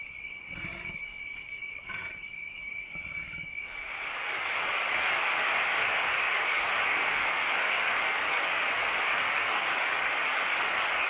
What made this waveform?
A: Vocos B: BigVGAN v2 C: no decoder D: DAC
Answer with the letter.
D